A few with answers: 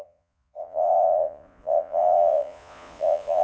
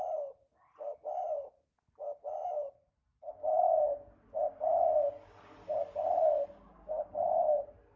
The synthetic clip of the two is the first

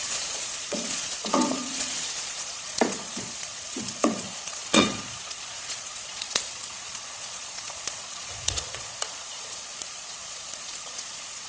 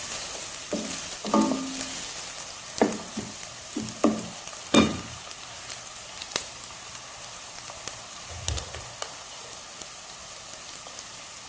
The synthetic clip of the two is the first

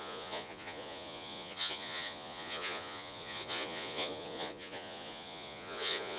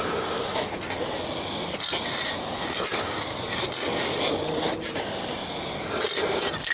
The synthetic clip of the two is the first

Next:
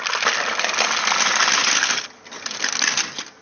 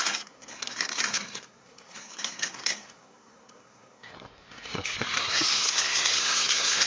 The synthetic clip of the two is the second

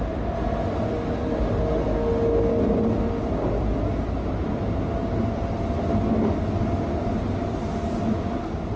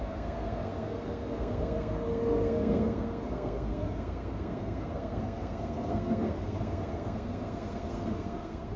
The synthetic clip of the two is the second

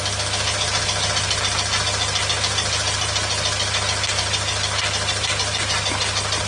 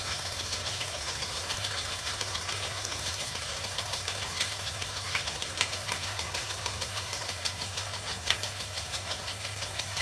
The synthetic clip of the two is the second